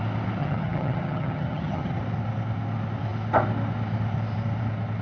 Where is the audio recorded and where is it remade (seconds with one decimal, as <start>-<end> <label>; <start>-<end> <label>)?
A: 0.0-0.4 recorded; 0.4-2.0 remade; 2.0-5.0 recorded